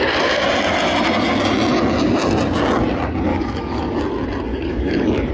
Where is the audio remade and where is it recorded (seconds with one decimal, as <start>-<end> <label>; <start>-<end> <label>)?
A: 0.0-3.3 recorded; 3.3-4.0 remade; 4.0-4.5 recorded; 4.5-5.3 remade